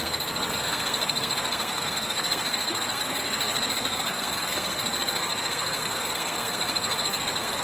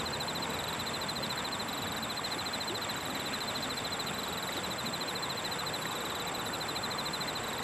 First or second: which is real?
second